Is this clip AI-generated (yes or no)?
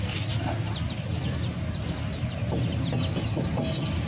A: no